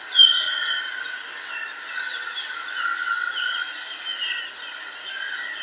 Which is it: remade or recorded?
recorded